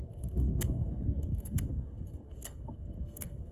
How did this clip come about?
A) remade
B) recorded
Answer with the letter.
A